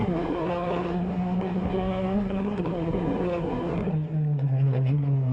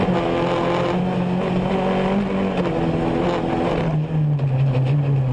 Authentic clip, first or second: second